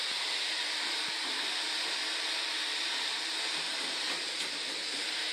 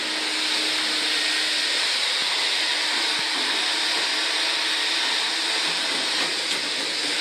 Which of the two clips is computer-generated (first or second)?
first